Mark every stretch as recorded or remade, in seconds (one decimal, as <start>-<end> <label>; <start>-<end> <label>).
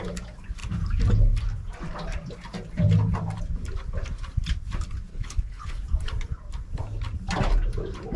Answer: 0.0-5.1 recorded; 5.1-5.8 remade; 5.8-8.2 recorded